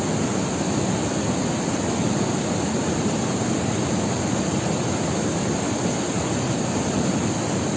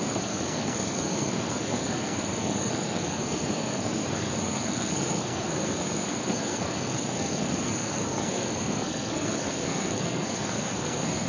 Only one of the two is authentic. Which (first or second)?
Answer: first